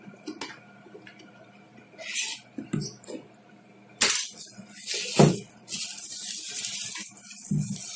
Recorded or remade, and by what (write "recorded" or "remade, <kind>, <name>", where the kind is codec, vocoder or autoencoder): recorded